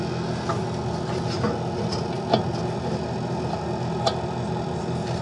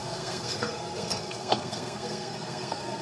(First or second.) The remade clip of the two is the second